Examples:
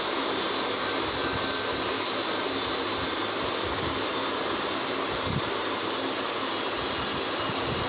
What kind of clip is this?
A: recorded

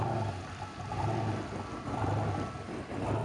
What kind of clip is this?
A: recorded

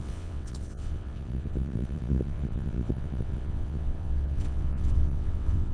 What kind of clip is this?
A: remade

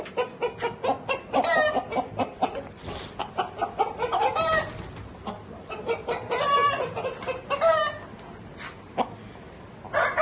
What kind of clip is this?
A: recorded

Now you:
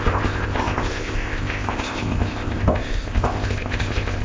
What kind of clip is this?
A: remade